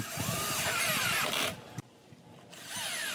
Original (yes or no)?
yes